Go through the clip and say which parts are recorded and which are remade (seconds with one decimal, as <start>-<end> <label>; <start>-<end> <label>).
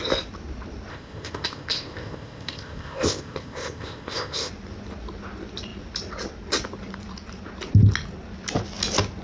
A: 0.0-0.9 recorded; 0.9-4.5 remade; 4.5-9.2 recorded